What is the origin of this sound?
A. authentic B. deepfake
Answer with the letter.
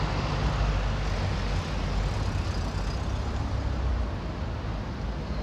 A